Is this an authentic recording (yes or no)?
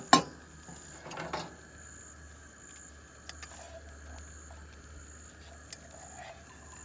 yes